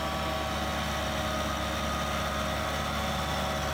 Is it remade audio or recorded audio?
recorded